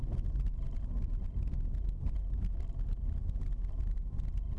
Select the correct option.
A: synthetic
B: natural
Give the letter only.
B